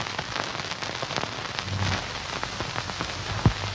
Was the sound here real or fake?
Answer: real